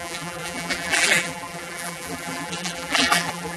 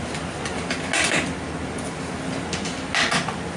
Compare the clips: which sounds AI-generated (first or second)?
first